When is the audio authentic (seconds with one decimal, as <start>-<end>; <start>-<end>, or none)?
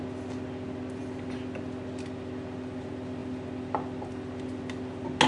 0.0-5.3